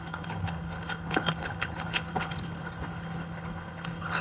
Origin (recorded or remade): remade